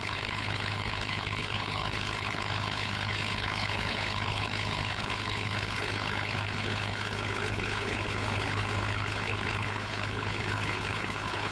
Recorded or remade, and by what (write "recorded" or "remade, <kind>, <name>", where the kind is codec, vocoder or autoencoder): remade, codec, HILCodec